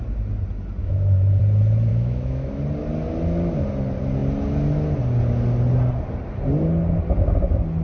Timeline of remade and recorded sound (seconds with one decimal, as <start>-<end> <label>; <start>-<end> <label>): 0.0-0.8 recorded; 0.8-1.4 remade; 1.4-1.9 recorded; 1.9-2.6 remade; 2.6-7.8 recorded